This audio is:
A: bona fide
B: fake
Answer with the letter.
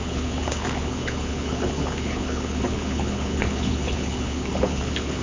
B